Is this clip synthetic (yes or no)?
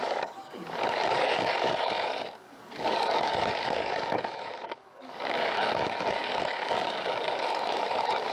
yes